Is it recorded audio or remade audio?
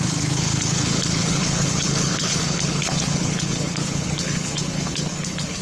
remade